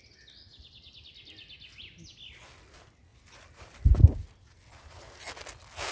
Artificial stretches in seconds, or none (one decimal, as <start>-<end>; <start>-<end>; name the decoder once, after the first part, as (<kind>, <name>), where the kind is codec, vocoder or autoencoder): 3.1-4.0 (vocoder, BigVGAN v2)